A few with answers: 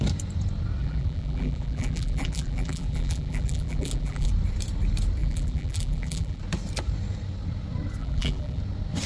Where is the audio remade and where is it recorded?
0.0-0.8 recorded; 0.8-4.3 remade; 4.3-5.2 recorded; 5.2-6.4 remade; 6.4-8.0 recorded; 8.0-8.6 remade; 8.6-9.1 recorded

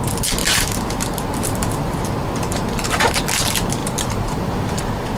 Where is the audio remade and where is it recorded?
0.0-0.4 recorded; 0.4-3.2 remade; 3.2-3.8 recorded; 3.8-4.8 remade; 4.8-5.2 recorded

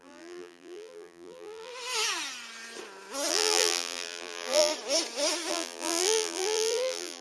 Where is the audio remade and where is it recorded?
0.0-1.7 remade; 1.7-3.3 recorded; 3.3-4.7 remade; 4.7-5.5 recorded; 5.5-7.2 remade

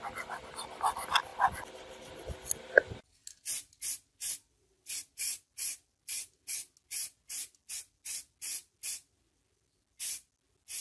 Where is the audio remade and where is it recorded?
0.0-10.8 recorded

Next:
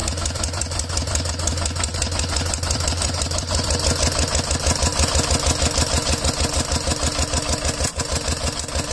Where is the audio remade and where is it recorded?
0.0-1.3 remade; 1.3-1.9 recorded; 1.9-3.7 remade; 3.7-8.9 recorded

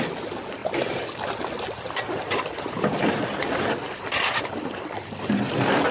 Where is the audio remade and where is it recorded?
0.0-5.9 remade